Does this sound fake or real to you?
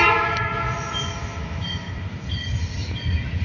real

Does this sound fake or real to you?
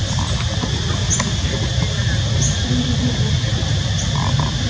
real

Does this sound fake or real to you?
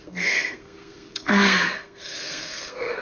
fake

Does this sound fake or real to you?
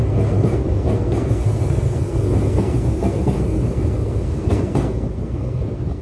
fake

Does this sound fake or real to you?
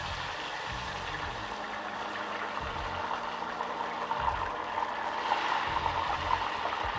real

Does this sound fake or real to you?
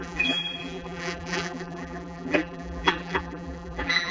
fake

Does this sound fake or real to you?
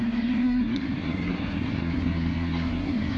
fake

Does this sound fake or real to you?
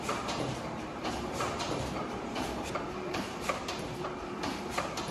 fake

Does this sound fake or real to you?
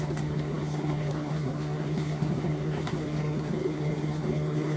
fake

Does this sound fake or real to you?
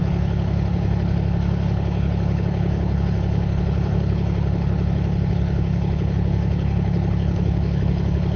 fake